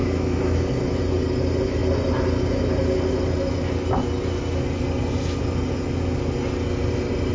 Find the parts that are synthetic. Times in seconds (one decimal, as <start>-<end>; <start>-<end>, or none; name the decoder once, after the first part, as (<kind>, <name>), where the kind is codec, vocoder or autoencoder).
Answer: 0.0-0.7 (autoencoder, DAC-VAE)